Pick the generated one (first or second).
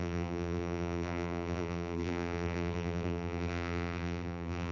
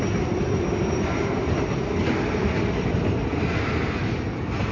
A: first